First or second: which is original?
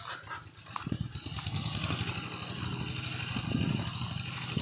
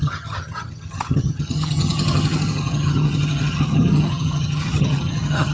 first